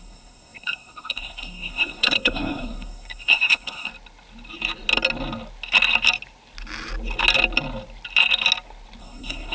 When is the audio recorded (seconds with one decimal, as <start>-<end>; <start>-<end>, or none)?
3.9-9.0